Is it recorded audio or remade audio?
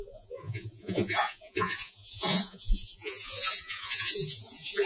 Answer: remade